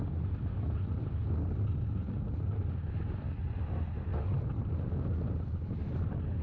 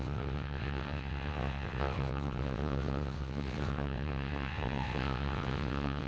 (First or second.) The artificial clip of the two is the second